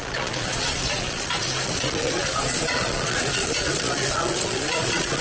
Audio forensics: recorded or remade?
remade